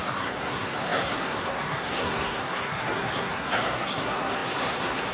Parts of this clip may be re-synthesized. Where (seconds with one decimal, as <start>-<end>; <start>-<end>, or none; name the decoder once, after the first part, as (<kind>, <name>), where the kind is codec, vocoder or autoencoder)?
0.0-5.1 (codec, SNAC)

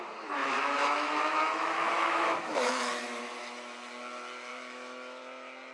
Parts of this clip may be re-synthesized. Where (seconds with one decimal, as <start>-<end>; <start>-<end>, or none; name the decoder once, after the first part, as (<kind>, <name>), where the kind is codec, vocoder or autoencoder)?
0.4-3.2 (autoencoder, DAC-VAE); 4.5-5.2

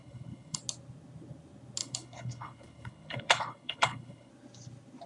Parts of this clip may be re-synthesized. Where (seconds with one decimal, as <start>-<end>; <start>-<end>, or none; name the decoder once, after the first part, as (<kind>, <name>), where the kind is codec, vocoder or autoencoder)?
0.0-0.6 (codec, HILCodec); 1.8-4.3

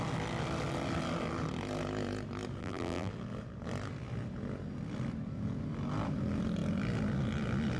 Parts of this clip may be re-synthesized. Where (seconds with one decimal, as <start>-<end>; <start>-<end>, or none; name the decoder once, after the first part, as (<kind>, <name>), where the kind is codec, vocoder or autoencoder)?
2.6-3.1 (vocoder, BigVGAN v2)